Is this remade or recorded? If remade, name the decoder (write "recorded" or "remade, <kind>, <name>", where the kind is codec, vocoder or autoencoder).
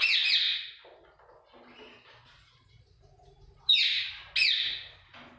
recorded